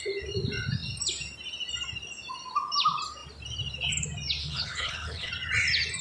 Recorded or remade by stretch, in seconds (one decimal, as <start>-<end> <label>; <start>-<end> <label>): 0.0-4.4 recorded; 4.4-5.3 remade; 5.3-6.0 recorded